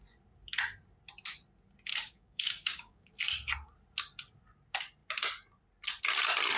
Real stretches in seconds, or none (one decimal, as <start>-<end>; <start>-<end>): 0.0-1.9; 3.2-6.6